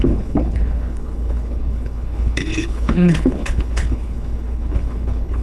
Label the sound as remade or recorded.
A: remade